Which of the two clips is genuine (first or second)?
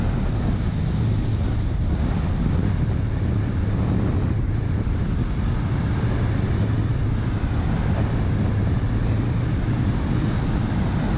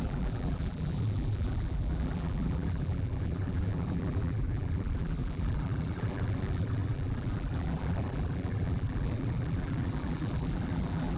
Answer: first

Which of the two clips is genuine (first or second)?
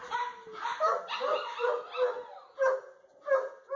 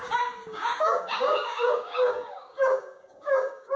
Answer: first